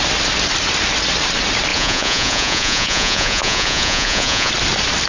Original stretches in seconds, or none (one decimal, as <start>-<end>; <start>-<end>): 0.0-1.7; 4.5-5.1